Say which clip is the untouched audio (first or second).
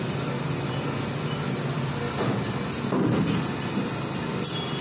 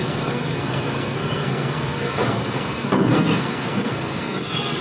first